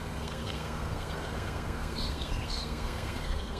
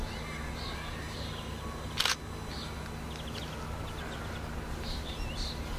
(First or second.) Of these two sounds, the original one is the second